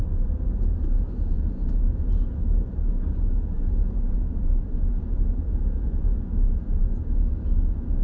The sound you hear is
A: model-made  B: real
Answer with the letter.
A